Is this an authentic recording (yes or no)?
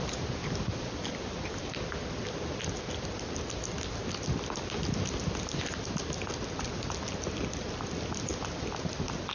yes